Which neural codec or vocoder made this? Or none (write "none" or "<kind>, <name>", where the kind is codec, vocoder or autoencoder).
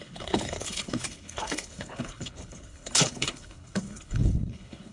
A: codec, HILCodec